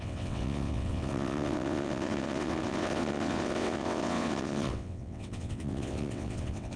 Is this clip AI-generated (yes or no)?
yes